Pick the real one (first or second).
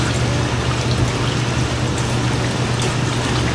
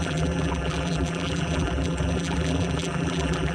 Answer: first